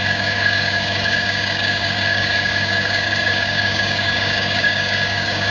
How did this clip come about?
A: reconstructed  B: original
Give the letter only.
A